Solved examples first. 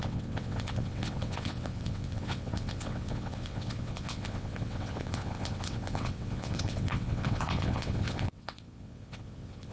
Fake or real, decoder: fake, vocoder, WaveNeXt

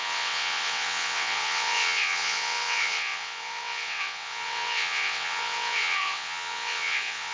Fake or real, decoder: fake, vocoder, WaveNeXt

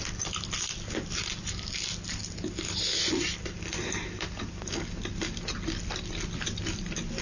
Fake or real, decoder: real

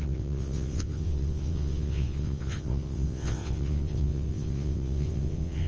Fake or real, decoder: fake, vocoder, WaveNeXt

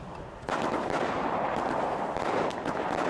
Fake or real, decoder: real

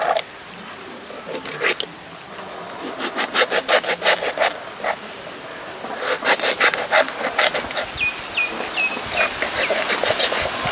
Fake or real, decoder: real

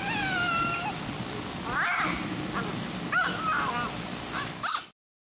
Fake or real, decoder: real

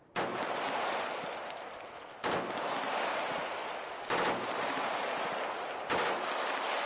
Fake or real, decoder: real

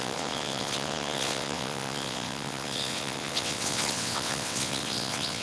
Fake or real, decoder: fake, vocoder, WaveNeXt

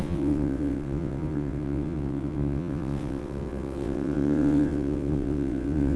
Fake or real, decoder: fake, vocoder, WaveNeXt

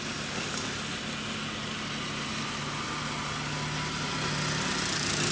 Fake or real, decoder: real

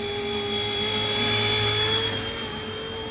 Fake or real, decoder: real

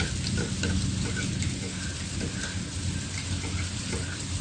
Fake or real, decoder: real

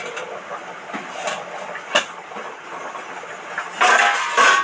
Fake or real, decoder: real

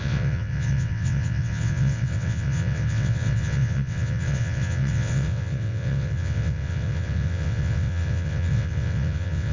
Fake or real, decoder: fake, vocoder, WaveNeXt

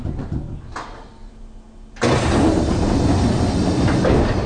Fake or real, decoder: real